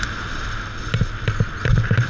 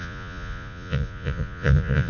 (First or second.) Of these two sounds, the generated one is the second